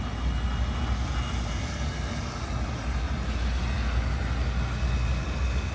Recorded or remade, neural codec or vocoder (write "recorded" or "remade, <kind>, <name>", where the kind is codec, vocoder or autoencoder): recorded